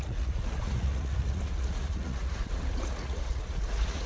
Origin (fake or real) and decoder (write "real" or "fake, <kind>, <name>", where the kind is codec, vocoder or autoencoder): fake, vocoder, Vocos